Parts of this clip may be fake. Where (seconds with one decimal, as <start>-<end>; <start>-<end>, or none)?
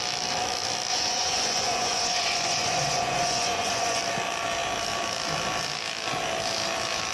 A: 0.9-4.0